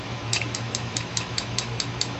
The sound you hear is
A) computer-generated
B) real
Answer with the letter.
A